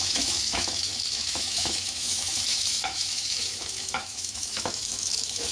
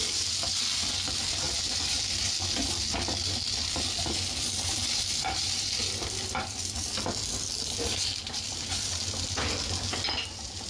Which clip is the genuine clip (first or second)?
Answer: second